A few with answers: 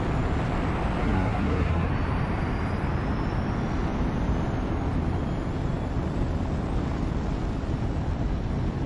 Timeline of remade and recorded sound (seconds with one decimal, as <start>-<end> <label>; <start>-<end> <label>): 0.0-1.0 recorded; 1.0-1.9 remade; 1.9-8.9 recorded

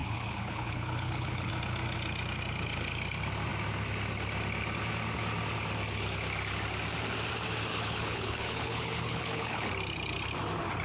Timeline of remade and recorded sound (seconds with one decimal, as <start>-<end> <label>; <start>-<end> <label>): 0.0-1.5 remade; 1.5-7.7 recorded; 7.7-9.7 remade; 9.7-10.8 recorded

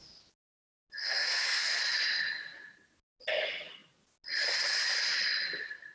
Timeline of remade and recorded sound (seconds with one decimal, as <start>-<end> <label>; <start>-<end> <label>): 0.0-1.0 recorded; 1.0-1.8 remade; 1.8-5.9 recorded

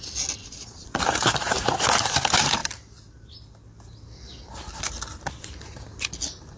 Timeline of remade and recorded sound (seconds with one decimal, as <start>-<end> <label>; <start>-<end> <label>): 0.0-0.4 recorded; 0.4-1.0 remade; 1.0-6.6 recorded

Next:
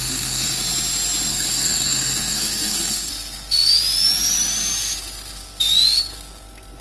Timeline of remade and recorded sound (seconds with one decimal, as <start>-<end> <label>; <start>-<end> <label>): 0.0-0.6 remade; 0.6-1.3 recorded; 1.3-3.1 remade; 3.1-6.8 recorded